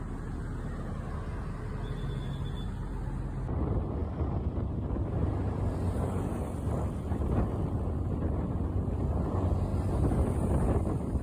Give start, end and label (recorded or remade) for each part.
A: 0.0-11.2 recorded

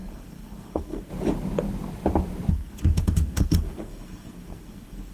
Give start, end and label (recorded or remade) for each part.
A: 0.0-1.1 remade; 1.1-2.5 recorded; 2.5-5.1 remade

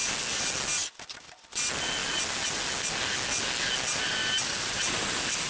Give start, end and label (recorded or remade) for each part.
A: 0.0-5.5 recorded

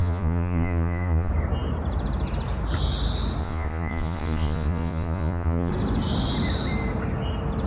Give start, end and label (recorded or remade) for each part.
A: 0.0-1.3 remade; 1.3-3.4 recorded; 3.4-5.7 remade; 5.7-7.7 recorded

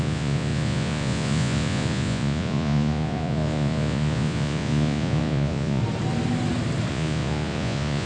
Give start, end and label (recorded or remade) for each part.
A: 0.0-5.8 remade; 5.8-6.9 recorded; 6.9-8.1 remade

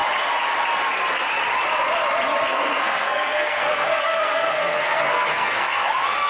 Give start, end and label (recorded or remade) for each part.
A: 0.0-2.5 recorded; 2.5-6.3 remade

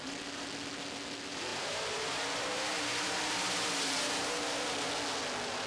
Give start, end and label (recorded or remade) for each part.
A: 0.0-1.5 recorded; 1.5-4.9 remade; 4.9-5.7 recorded

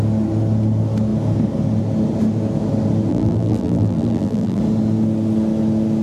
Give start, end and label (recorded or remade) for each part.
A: 0.0-3.1 recorded; 3.1-4.6 remade; 4.6-6.0 recorded